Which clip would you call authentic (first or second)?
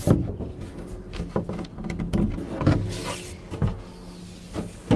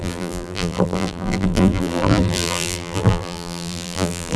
first